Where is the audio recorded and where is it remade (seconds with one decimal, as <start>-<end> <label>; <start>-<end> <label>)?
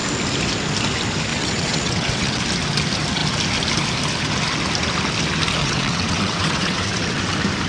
0.0-1.3 recorded; 1.3-2.4 remade; 2.4-5.6 recorded; 5.6-7.2 remade; 7.2-7.7 recorded